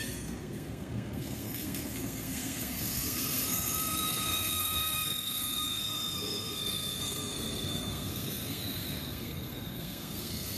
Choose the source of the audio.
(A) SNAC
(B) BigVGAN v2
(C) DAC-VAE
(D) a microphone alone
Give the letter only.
A